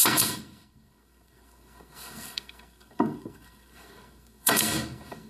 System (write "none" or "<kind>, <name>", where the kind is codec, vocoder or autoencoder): codec, SNAC